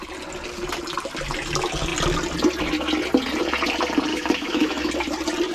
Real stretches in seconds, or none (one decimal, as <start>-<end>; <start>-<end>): 0.0-4.1; 4.9-5.5